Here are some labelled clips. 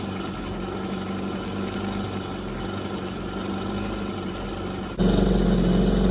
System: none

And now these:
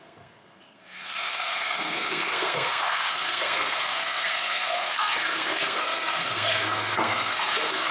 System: codec, SNAC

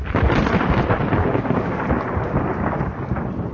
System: none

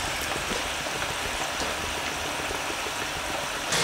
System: none